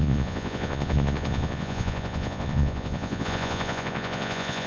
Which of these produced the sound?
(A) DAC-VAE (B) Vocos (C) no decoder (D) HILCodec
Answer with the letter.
B